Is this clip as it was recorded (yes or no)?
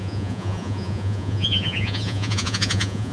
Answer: no